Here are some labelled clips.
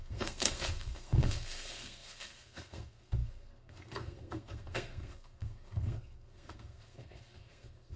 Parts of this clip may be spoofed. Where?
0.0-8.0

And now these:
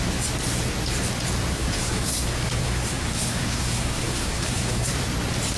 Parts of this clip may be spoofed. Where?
1.5-4.9

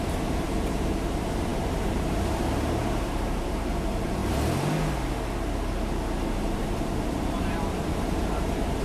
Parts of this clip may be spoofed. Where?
0.0-4.2; 6.3-8.8

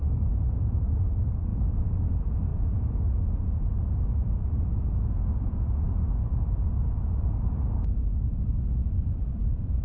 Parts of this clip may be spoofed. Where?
0.0-8.5; 9.0-9.8